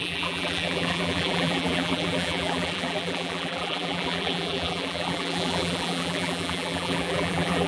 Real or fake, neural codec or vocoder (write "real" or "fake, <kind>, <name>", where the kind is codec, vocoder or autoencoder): fake, vocoder, BigVGAN v2